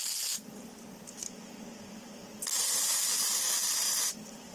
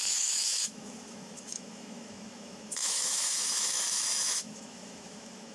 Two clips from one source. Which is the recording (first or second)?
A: first